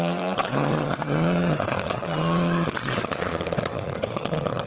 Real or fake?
fake